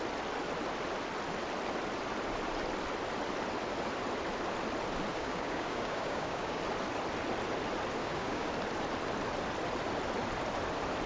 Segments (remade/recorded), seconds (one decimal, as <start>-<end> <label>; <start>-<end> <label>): 0.0-5.1 recorded; 5.1-6.6 remade; 6.6-8.0 recorded; 8.0-8.5 remade; 8.5-11.1 recorded